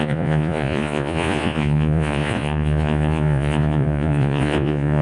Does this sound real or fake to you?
fake